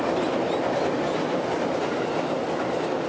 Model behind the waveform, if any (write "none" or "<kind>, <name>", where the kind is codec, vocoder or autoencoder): none